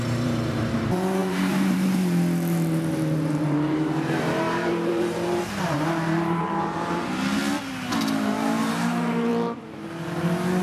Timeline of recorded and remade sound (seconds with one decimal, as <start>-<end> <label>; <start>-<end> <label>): 0.0-7.4 remade; 7.4-8.0 recorded; 8.0-9.3 remade; 9.3-10.6 recorded